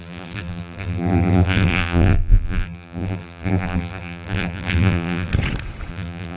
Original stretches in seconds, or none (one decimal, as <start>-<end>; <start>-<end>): 5.3-5.9